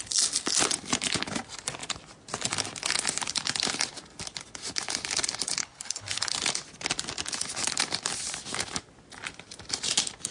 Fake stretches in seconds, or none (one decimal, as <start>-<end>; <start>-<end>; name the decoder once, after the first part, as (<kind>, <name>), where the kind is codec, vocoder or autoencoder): 5.6-6.3 (codec, HILCodec)